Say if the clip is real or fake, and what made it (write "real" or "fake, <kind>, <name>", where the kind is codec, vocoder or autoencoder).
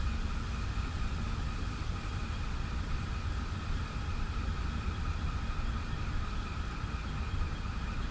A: real